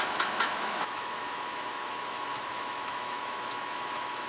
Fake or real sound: fake